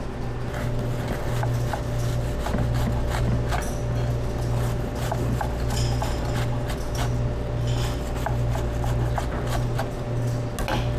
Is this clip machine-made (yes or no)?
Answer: no